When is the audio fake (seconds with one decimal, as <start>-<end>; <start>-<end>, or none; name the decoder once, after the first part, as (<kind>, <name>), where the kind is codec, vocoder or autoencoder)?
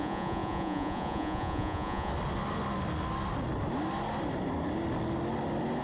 0.0-2.1 (vocoder, Vocos)